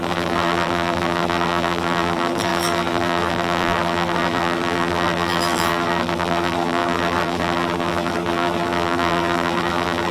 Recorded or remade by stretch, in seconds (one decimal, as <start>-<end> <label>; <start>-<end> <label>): 0.0-10.1 remade